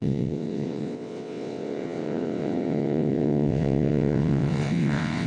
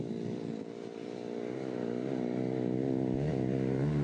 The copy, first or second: first